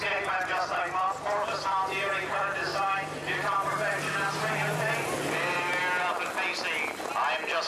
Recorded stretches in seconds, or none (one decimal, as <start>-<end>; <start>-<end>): 0.0-2.7; 5.7-7.7